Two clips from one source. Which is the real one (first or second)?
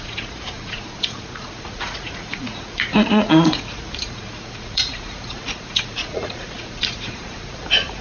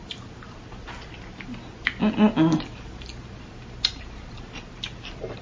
second